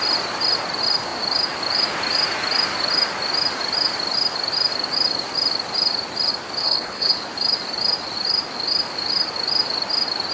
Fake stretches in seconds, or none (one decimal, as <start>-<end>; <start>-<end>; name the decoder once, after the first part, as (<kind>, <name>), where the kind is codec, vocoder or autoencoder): 6.6-7.1 (codec, HILCodec)